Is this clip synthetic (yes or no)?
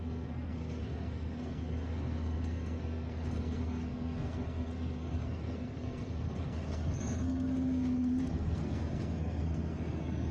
yes